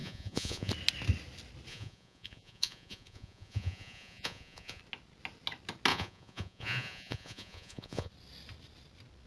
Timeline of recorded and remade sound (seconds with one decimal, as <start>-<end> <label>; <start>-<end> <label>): 0.0-0.7 remade; 0.7-1.7 recorded; 1.7-4.8 remade; 4.8-5.9 recorded; 5.9-8.1 remade; 8.1-9.3 recorded